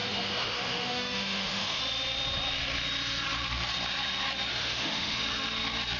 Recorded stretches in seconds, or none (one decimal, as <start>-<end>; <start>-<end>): 1.8-4.5; 5.2-6.0